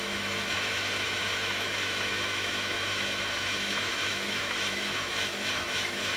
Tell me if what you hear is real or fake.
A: fake